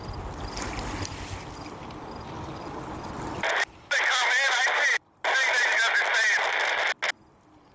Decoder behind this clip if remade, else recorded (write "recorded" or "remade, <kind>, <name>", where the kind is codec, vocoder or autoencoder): recorded